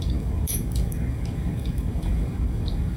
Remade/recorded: remade